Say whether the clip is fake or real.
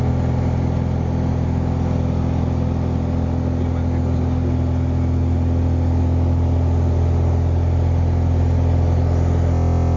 real